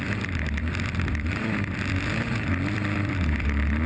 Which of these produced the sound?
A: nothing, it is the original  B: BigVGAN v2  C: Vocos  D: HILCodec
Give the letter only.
B